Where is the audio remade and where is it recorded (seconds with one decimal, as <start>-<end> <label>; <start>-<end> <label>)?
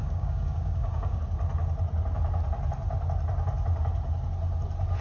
0.0-1.2 remade; 1.2-5.0 recorded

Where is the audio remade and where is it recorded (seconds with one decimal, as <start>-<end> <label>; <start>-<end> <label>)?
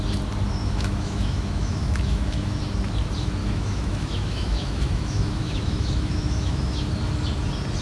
0.0-0.6 recorded; 0.6-2.6 remade; 2.6-3.4 recorded; 3.4-6.9 remade; 6.9-7.8 recorded